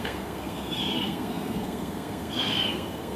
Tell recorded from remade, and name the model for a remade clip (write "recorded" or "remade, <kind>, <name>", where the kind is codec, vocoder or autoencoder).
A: remade, codec, SNAC